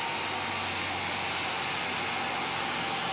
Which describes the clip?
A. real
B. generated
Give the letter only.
A